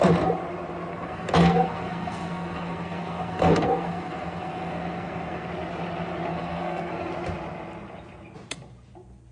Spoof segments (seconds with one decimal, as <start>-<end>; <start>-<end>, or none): 0.9-5.5; 6.3-7.1